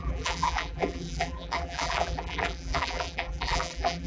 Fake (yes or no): yes